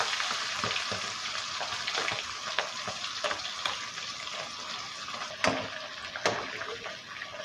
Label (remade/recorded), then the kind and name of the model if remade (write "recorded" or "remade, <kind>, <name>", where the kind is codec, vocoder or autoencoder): recorded